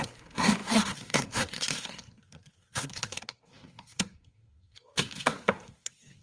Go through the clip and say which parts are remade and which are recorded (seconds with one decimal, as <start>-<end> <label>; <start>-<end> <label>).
0.0-6.2 remade